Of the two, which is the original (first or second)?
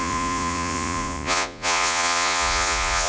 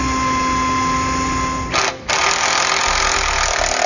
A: second